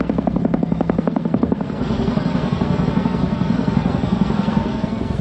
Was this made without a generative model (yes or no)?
no